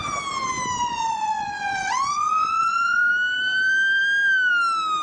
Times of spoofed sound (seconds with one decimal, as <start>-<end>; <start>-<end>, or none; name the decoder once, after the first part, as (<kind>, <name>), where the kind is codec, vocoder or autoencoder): 0.8-3.1 (vocoder, Vocos)